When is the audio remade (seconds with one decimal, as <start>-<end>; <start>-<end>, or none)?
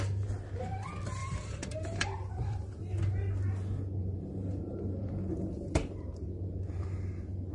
1.2-2.8; 4.0-6.3